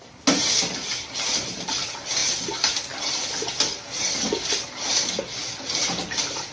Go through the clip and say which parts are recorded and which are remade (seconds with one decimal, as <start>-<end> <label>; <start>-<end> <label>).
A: 0.0-6.5 recorded